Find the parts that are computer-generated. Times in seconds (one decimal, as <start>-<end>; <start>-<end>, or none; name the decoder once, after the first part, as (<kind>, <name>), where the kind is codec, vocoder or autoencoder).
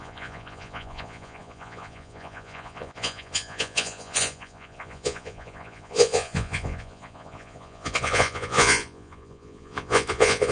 0.0-10.5 (vocoder, Vocos)